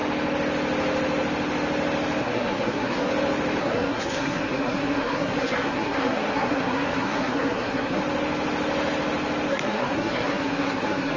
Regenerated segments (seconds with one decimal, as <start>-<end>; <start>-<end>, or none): 2.2-3.1; 3.6-8.0; 9.5-11.2